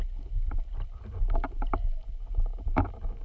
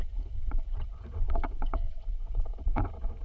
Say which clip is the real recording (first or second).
first